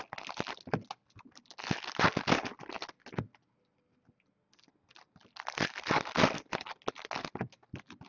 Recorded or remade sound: recorded